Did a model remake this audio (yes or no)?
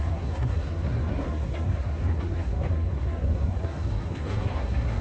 yes